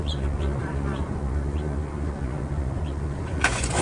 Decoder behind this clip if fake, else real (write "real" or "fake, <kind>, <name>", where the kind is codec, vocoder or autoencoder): fake, vocoder, Vocos